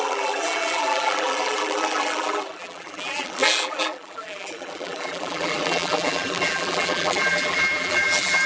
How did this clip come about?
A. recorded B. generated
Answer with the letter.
B